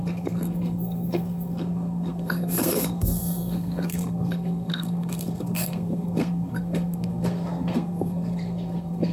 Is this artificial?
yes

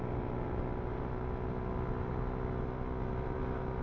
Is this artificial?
no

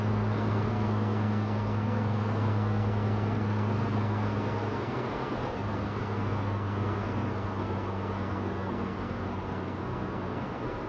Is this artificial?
yes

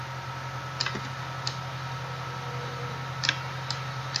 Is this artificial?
no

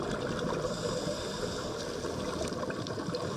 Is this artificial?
no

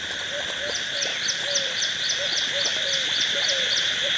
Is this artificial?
no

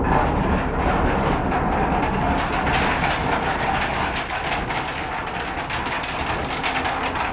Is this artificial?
no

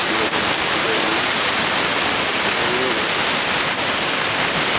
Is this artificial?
no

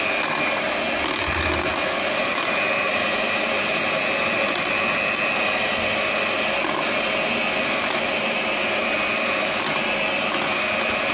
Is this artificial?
no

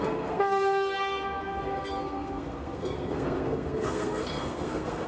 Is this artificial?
yes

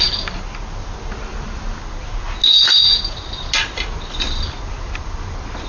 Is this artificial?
no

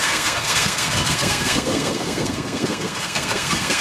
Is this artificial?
yes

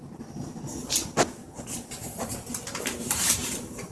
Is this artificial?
no